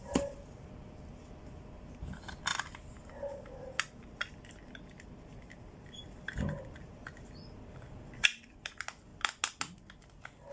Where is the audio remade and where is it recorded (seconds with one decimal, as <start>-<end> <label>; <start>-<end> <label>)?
0.0-10.5 recorded